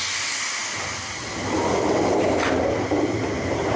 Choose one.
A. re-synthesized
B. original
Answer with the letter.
B